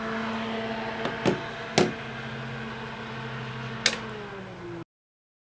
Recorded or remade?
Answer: recorded